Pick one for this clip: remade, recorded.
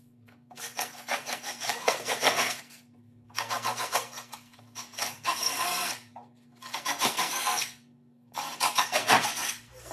remade